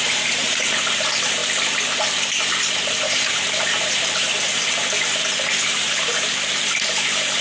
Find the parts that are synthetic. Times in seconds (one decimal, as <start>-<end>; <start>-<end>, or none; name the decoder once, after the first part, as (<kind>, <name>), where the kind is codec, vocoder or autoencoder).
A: 0.0-1.4 (vocoder, BigVGAN v2); 2.9-7.4